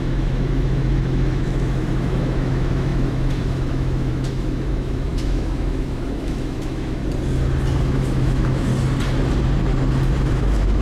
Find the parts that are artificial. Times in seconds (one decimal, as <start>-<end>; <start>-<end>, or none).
0.0-7.0; 7.8-8.7; 10.2-10.8